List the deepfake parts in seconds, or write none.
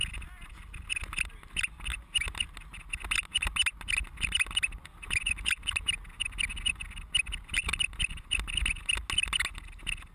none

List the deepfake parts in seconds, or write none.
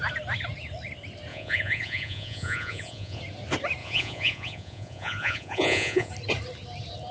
1.3-3.2 (vocoder, Vocos); 3.8-6.1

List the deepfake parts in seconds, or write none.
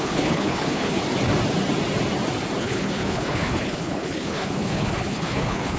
0.0-1.0 (codec, HILCodec); 2.6-5.8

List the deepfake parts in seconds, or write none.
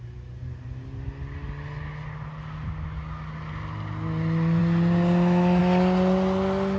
none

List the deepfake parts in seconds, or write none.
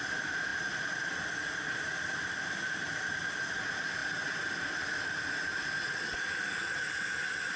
none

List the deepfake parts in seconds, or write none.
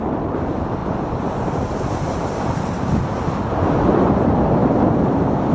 0.8-4.1 (vocoder, BigVGAN v2)